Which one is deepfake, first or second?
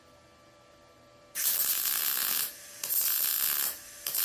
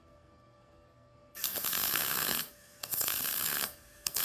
second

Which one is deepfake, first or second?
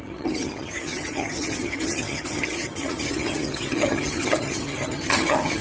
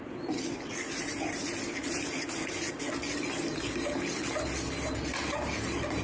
first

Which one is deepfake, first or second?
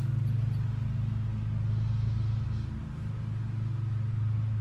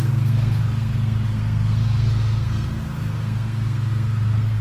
second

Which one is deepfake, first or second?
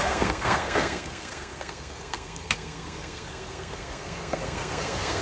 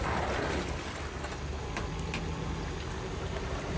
first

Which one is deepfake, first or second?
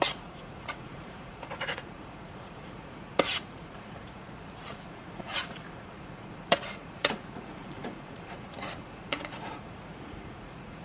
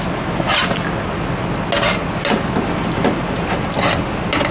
first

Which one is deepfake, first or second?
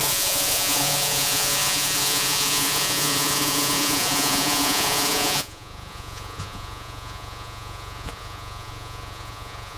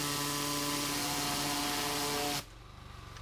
first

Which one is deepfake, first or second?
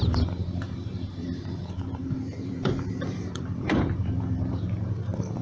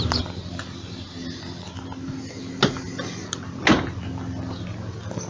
first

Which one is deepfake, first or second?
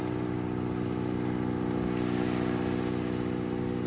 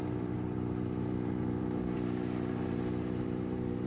second